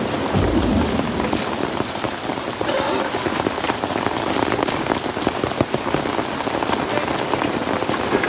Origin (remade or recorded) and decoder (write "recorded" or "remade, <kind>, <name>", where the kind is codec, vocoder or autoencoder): recorded